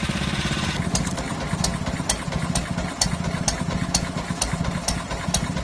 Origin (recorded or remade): recorded